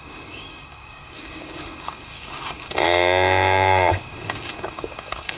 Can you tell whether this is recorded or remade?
remade